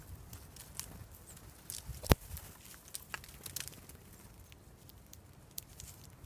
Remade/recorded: recorded